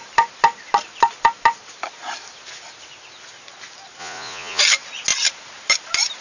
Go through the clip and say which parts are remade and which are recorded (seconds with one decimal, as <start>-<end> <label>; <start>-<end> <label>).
0.0-4.0 recorded; 4.0-4.6 remade; 4.6-6.2 recorded